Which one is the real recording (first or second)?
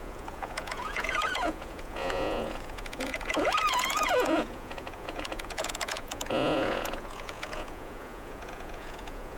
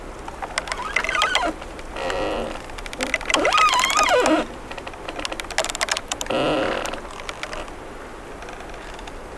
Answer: second